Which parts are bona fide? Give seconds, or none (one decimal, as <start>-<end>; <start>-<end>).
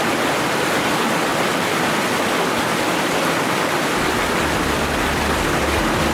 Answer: 0.0-6.1